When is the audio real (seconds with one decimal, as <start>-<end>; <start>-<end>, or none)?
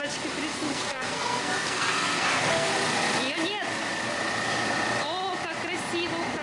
0.0-0.5; 2.7-6.4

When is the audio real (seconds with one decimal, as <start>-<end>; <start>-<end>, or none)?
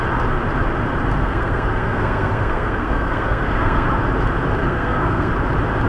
0.0-1.2; 3.9-4.6; 5.3-5.9